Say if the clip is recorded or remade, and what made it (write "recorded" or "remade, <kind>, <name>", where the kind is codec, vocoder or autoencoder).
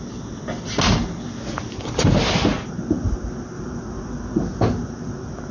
recorded